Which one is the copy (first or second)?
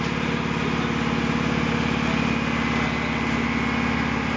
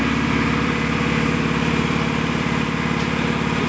second